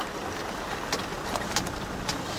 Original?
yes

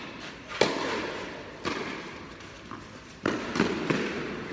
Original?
yes